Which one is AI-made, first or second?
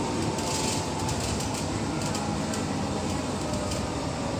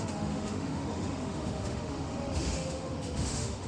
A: second